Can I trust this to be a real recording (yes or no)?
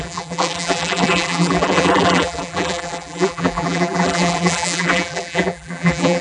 no